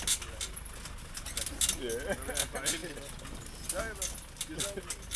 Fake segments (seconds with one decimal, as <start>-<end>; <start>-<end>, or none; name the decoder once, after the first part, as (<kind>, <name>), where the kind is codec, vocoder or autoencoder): none